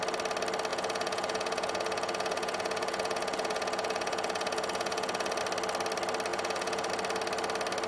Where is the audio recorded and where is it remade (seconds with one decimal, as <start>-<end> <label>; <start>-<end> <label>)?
0.0-0.7 recorded; 0.7-5.4 remade; 5.4-6.3 recorded; 6.3-6.9 remade; 6.9-7.9 recorded